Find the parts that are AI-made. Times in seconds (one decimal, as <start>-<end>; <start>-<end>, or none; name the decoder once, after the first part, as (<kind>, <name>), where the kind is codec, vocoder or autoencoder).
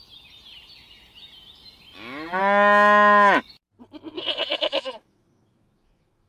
4.5-6.3 (autoencoder, DAC-VAE)